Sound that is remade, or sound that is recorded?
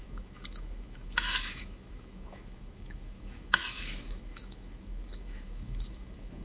remade